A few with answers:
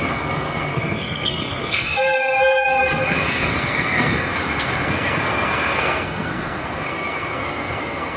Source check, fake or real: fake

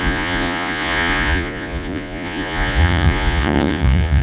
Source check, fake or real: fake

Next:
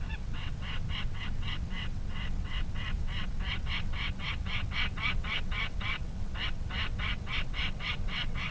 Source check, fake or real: fake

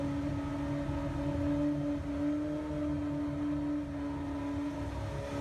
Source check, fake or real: real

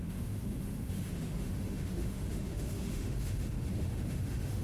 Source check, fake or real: fake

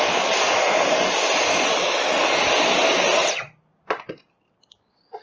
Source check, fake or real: real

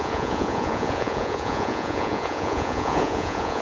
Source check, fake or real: fake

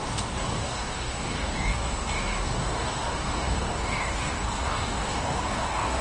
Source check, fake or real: fake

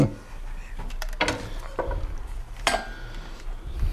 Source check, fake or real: real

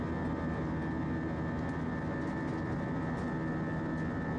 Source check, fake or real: real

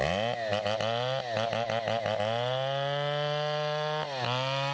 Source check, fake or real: real